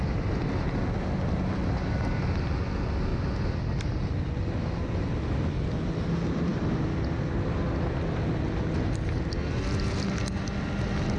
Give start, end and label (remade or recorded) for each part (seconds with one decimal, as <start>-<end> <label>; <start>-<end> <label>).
0.0-11.2 recorded